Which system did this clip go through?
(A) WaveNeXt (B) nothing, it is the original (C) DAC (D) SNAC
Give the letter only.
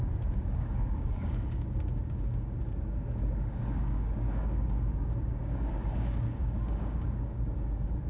C